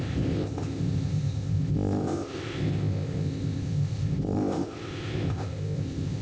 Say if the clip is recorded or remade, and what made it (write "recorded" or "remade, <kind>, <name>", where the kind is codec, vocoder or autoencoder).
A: remade, codec, ZipCodec